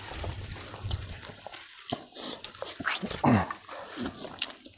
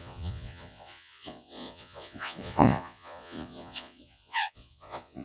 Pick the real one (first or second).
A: first